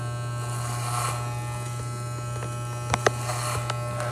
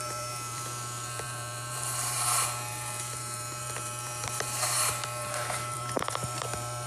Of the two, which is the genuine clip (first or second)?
first